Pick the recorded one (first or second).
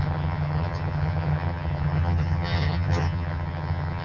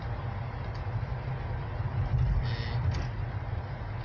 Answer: second